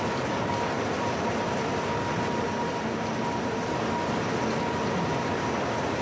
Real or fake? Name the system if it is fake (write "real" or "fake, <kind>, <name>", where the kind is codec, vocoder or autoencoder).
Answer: real